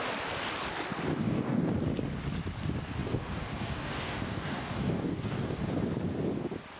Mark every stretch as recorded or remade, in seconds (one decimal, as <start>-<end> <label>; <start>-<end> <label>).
0.0-1.1 recorded; 1.1-1.7 remade; 1.7-3.0 recorded; 3.0-5.7 remade; 5.7-6.8 recorded